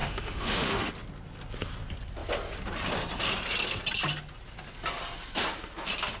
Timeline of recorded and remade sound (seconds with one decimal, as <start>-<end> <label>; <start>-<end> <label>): 0.0-0.9 remade; 0.9-6.2 recorded